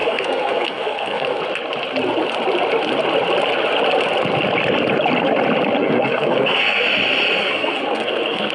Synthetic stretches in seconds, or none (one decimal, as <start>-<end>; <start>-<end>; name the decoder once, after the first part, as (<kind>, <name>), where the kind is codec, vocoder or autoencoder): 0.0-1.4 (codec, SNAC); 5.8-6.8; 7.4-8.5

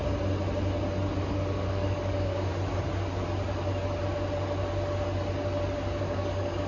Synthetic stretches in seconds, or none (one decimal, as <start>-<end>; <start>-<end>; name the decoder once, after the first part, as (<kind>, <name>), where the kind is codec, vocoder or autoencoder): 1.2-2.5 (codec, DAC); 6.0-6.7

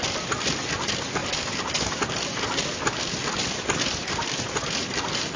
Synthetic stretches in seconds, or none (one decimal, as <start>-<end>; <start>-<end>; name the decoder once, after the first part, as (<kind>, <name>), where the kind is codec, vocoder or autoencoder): none

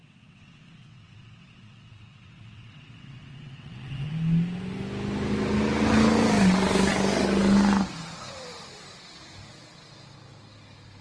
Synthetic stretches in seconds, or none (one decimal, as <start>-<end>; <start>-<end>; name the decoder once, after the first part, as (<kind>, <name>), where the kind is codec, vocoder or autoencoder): 0.0-4.1 (vocoder, WaveNeXt)

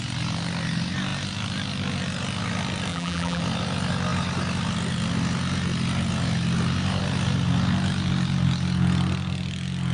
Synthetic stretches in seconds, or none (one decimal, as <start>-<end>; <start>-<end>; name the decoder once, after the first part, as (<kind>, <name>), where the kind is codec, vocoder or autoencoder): 2.9-3.4 (vocoder, BigVGAN v2)